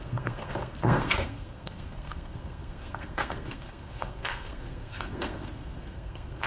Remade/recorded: remade